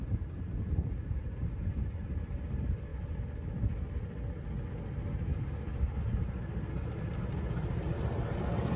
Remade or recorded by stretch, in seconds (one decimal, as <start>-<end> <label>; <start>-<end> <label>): 0.0-2.4 remade; 2.4-8.8 recorded